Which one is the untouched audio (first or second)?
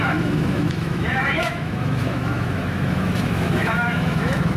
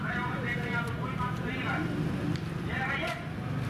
second